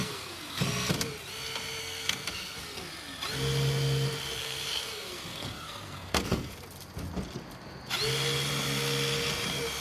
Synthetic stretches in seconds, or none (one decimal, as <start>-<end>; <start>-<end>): 0.0-0.6; 1.8-2.9; 4.4-6.5